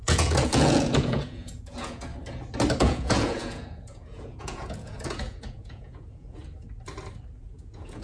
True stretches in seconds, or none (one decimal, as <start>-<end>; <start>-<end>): 2.1-2.8; 6.4-7.4